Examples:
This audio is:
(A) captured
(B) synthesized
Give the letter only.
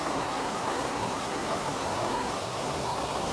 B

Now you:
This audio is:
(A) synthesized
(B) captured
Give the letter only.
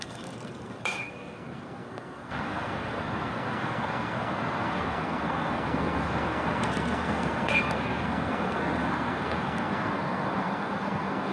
A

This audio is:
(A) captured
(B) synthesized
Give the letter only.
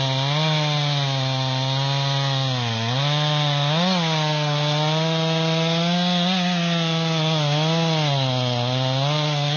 A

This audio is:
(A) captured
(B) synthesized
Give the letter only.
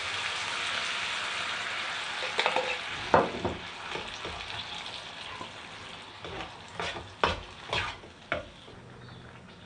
A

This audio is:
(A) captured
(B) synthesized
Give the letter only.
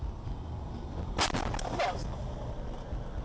A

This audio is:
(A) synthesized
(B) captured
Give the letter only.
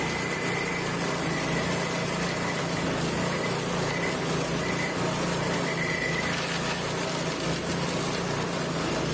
B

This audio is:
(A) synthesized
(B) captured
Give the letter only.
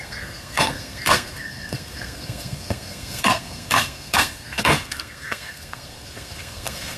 A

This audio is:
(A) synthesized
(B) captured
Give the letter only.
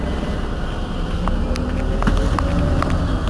B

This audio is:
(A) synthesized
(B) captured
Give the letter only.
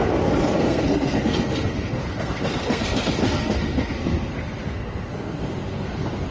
A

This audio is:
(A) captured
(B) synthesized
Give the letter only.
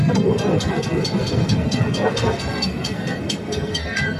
B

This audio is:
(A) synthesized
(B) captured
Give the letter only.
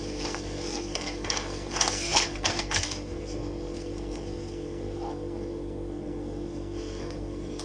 A